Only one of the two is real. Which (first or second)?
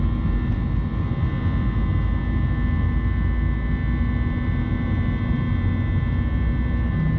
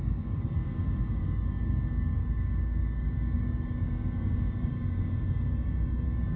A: first